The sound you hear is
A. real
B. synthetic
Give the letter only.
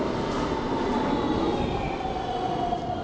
A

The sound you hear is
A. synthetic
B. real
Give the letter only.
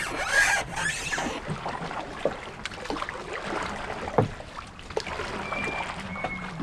B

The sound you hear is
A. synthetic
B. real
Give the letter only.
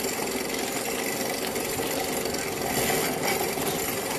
B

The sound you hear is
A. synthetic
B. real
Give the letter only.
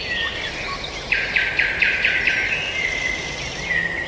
B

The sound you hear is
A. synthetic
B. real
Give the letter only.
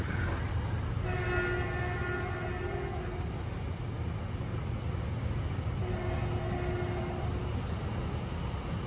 B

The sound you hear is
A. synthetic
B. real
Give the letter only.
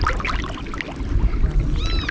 B